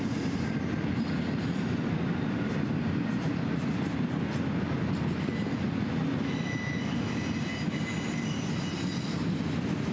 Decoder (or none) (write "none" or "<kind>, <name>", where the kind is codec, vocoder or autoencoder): none